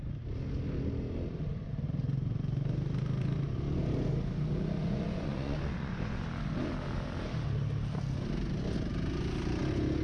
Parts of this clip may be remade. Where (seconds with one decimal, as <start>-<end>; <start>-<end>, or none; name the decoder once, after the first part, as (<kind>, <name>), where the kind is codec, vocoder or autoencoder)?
4.8-6.2 (vocoder, Vocos)